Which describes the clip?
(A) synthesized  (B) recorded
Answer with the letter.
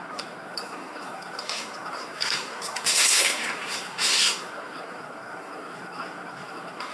A